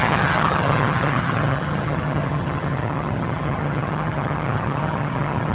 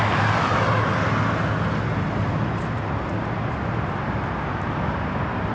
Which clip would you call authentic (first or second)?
second